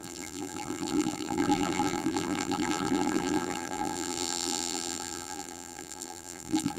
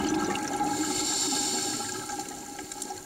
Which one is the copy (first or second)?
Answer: first